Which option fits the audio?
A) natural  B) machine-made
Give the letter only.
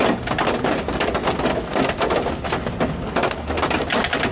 A